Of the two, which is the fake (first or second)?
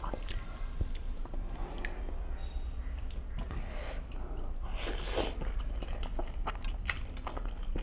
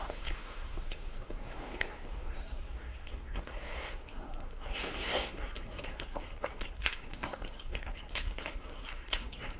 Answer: second